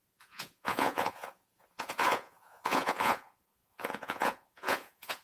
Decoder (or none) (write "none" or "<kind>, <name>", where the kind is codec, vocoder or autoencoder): vocoder, Vocos